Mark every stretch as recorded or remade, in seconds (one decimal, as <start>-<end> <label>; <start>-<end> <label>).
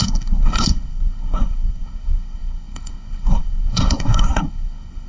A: 0.0-5.1 remade